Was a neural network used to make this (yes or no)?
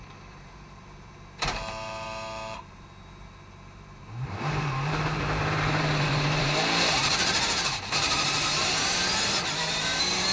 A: yes